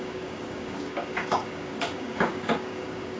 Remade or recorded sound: remade